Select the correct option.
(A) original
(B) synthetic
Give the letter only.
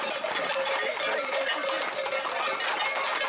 A